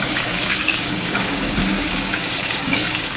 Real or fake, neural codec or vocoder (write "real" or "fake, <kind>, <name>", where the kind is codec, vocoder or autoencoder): fake, codec, DAC